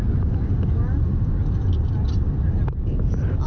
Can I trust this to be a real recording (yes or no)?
yes